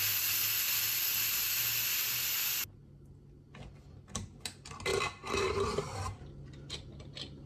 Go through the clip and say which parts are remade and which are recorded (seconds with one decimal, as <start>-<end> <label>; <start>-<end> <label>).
0.0-7.5 recorded